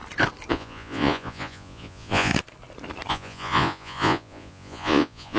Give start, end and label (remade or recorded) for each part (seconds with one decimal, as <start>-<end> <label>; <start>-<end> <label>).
0.0-0.5 recorded; 0.5-2.3 remade; 2.3-3.1 recorded; 3.1-5.4 remade